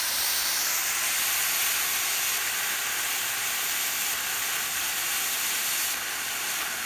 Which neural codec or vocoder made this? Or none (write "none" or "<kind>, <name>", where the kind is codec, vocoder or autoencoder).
none